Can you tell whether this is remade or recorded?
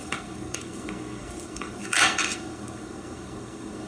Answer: remade